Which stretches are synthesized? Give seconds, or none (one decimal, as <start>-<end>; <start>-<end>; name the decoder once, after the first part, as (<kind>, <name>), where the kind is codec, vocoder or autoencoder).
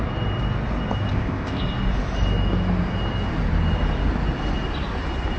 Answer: 1.1-1.6 (codec, ZipCodec)